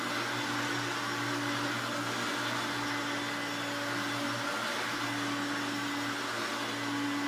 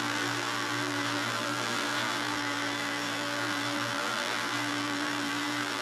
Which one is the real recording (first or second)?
first